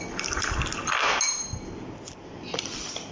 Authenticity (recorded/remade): remade